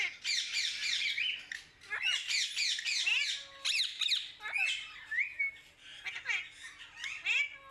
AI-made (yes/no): no